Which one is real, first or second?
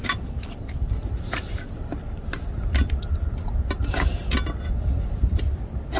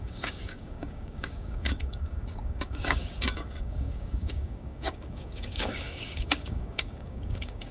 first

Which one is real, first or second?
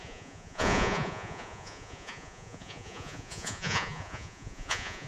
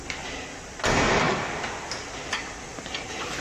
second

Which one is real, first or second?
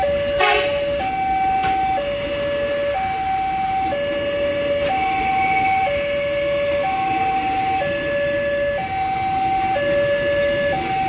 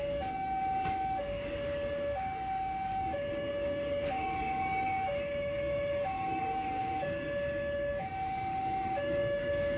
first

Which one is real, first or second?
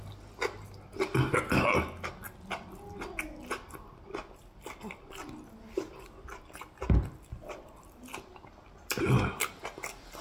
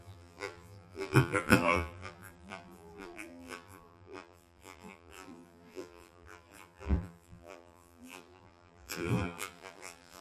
first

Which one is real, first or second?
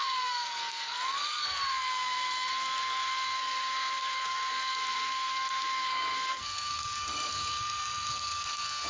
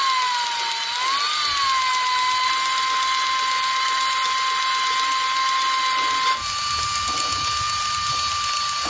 second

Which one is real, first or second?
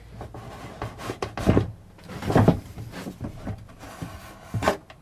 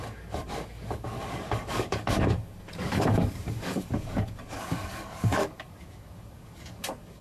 first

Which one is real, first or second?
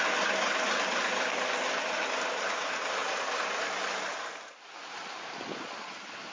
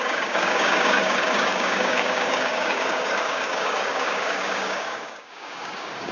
first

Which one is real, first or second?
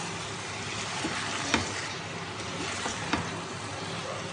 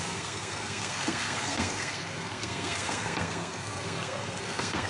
first